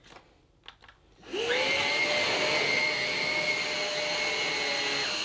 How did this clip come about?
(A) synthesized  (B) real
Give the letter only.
B